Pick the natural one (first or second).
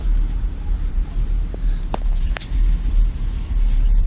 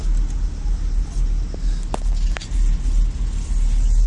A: second